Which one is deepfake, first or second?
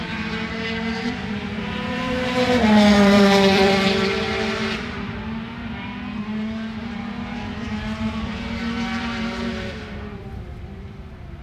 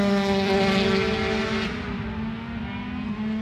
first